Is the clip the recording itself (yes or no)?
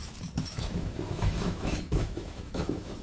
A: no